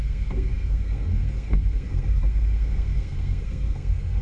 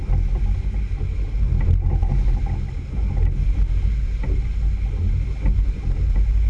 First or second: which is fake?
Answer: first